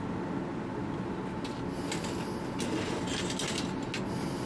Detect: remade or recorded recorded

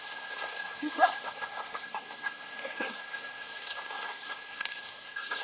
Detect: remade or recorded remade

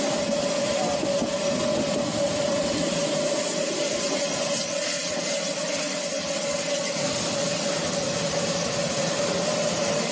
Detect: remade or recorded recorded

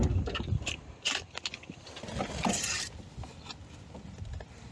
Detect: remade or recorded recorded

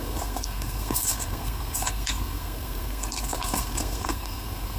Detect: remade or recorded remade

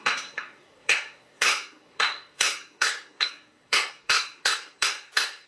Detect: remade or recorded remade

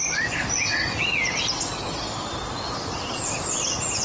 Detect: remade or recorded recorded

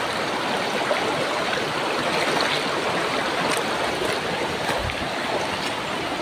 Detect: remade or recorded recorded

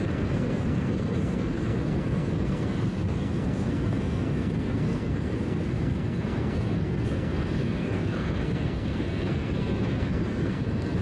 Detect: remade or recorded remade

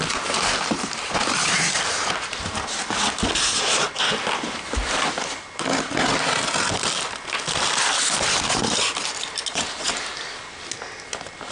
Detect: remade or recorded recorded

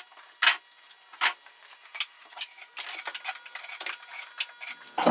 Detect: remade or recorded recorded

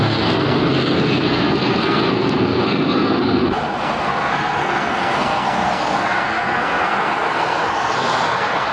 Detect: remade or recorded remade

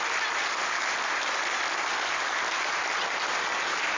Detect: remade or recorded recorded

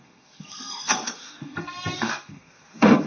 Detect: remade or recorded remade